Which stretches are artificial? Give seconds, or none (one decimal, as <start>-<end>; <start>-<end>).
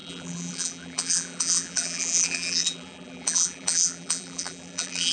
0.0-5.1